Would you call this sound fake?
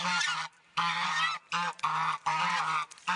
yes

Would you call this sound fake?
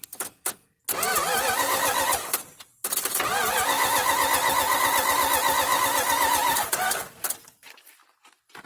no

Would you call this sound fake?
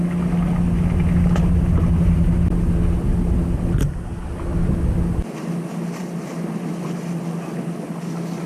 no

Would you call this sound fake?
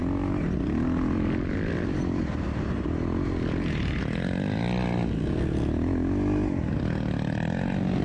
no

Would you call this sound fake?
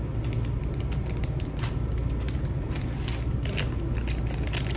no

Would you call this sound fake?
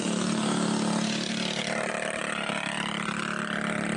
no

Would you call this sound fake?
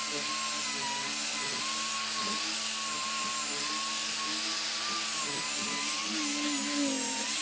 no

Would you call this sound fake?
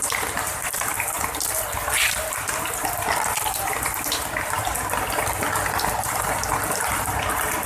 no